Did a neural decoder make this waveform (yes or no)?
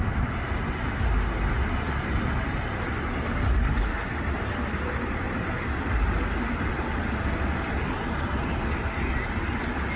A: no